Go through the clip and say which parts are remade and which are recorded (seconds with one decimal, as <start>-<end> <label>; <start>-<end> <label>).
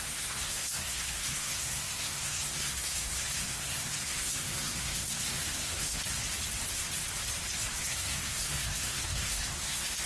0.0-6.2 remade; 6.2-7.7 recorded; 7.7-10.1 remade